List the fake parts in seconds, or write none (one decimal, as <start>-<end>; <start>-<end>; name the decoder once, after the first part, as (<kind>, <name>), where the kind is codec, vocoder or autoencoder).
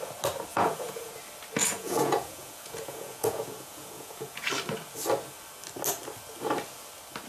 0.5-1.1 (vocoder, Vocos); 1.6-4.5